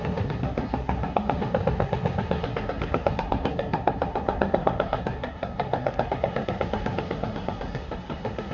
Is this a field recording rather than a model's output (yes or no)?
no